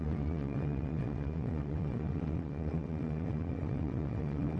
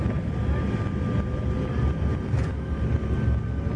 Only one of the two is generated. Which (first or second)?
first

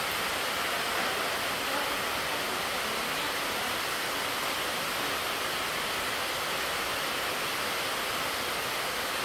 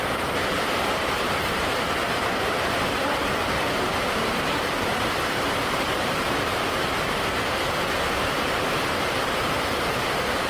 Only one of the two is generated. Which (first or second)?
second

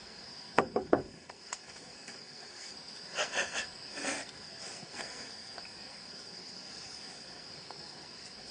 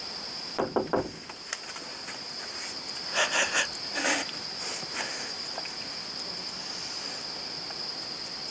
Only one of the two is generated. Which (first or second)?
first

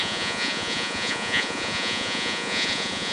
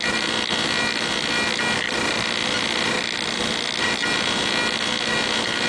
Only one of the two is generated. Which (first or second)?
first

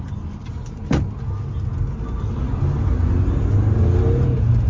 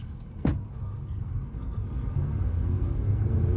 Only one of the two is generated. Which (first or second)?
second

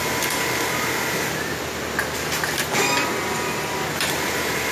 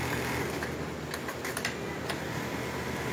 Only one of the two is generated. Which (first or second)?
first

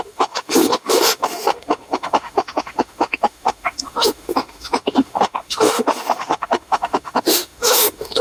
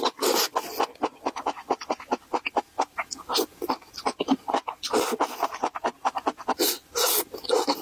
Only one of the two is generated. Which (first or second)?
first